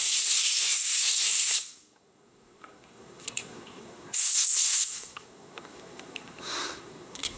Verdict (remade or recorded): remade